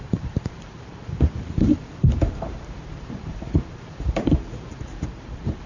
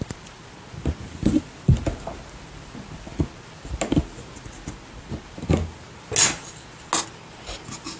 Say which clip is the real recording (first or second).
second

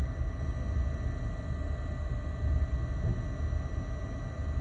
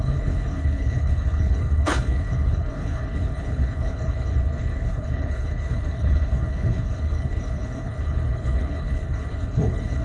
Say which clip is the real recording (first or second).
first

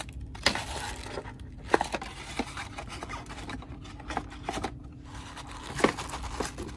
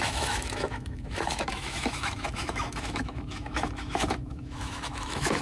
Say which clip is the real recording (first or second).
first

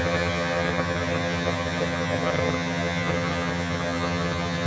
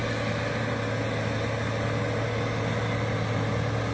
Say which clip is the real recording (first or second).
second